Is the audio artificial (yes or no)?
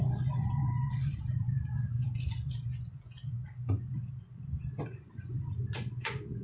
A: yes